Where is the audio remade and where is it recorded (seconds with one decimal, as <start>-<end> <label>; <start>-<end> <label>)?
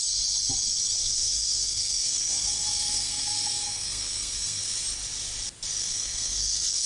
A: 0.0-1.0 recorded; 1.0-4.6 remade; 4.6-5.8 recorded; 5.8-6.9 remade